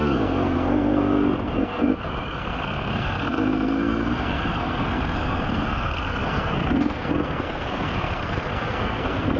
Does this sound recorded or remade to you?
remade